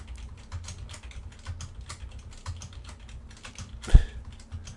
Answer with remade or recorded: recorded